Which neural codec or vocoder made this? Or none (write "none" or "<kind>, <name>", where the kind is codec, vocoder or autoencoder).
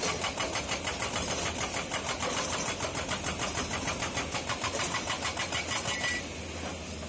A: none